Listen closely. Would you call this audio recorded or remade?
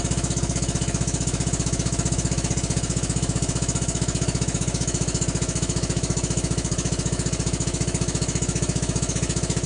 remade